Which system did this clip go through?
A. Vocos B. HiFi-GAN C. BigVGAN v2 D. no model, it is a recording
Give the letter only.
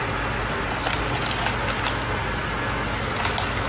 D